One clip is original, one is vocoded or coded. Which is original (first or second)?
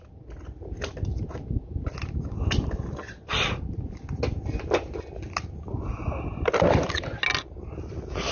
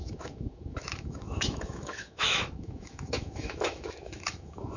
first